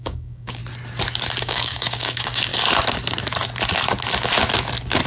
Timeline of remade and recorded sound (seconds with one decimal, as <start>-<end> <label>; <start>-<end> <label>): 0.0-0.6 remade; 0.6-1.4 recorded; 1.4-2.5 remade; 2.5-5.1 recorded